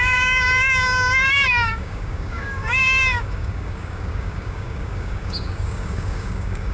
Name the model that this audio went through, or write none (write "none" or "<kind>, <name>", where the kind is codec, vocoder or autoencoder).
codec, DAC